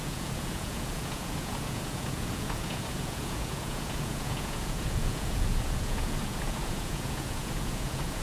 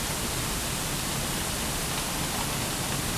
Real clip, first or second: second